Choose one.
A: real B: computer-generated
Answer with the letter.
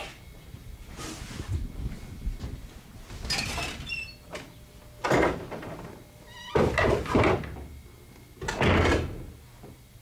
A